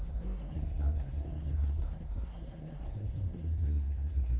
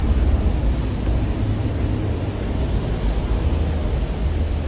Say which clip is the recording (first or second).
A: second